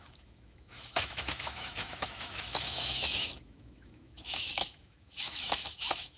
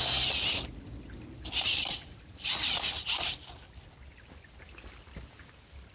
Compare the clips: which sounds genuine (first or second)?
second